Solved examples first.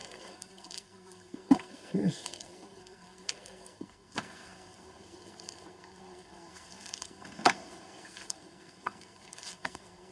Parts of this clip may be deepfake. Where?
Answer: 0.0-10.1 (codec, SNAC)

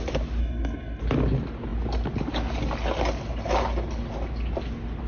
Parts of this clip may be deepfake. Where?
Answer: 0.4-1.0 (codec, SNAC)

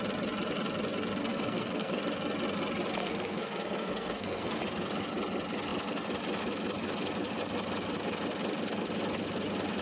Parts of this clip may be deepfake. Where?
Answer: 1.2-2.0 (codec, SNAC); 3.0-4.6

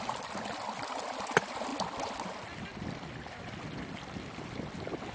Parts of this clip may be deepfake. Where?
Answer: none

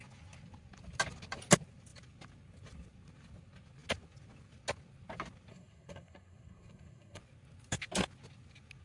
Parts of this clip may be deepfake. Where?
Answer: 5.5-7.2 (codec, SNAC)

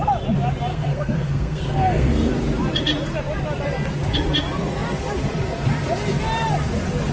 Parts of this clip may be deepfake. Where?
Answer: 0.7-2.3 (codec, SNAC)

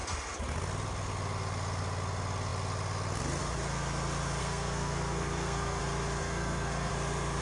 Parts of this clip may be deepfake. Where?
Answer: 4.4-5.8 (codec, SNAC); 6.2-6.9